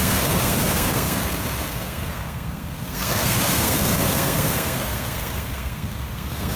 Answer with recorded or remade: remade